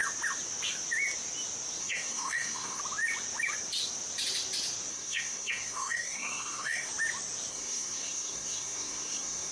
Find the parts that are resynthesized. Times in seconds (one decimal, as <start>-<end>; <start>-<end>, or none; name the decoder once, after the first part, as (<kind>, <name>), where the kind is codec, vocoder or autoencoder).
1.8-2.8 (codec, SNAC); 4.9-6.9; 7.5-9.5